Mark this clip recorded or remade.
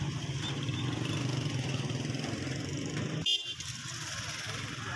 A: recorded